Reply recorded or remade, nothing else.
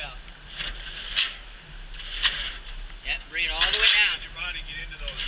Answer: recorded